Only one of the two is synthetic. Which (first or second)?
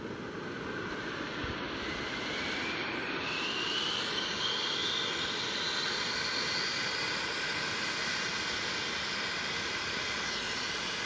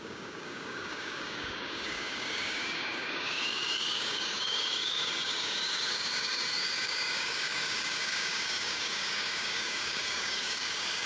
second